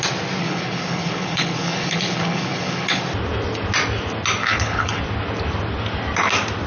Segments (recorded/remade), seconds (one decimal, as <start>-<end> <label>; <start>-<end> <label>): 0.0-0.4 recorded; 0.4-3.0 remade; 3.0-4.4 recorded; 4.4-5.0 remade; 5.0-6.7 recorded